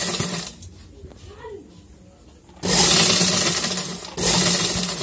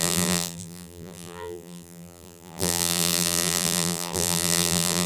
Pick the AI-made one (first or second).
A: second